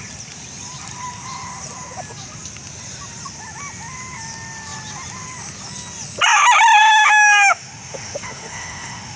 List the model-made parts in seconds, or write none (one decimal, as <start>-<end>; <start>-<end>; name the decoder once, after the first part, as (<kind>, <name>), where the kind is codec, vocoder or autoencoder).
6.8-9.2 (autoencoder, DAC-VAE)